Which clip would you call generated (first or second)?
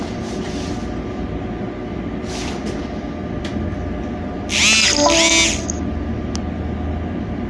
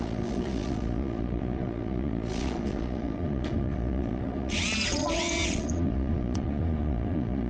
second